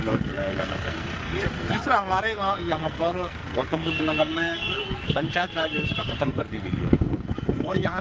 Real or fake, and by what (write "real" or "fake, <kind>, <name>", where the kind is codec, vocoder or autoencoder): fake, codec, SNAC